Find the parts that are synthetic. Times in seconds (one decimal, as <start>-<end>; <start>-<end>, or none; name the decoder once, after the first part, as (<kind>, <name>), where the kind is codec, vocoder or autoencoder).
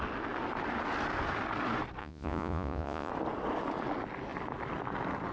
2.0-3.1 (vocoder, Vocos)